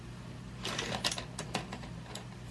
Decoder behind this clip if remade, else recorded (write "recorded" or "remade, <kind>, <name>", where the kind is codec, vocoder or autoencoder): recorded